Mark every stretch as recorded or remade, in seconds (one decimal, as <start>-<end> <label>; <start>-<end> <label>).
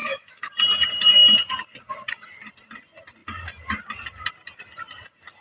0.0-0.5 remade; 0.5-5.4 recorded